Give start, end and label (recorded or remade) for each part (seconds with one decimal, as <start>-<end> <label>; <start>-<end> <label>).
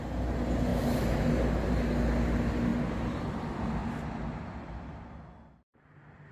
0.0-0.7 recorded; 0.7-1.3 remade; 1.3-6.3 recorded